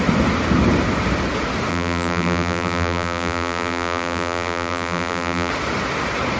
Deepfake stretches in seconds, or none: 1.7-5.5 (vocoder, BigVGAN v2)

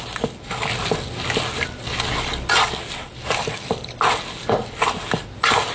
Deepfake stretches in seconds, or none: 3.0-4.2 (vocoder, BigVGAN v2)

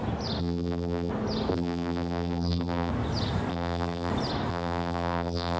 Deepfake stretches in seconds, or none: 0.4-1.1 (vocoder, BigVGAN v2); 1.5-2.9; 3.5-4.1; 4.5-5.6

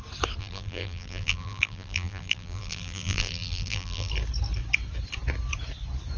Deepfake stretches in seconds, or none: 0.4-4.1 (vocoder, BigVGAN v2)

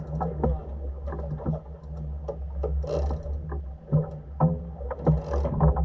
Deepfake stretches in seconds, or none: none